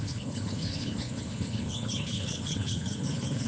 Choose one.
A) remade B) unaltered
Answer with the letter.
A